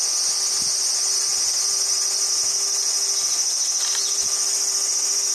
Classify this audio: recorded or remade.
recorded